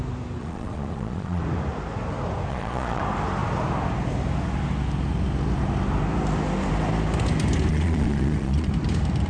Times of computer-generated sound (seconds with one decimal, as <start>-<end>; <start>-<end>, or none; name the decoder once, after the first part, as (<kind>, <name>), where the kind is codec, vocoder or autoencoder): 0.4-1.4 (vocoder, Vocos); 2.5-3.0; 7.7-8.7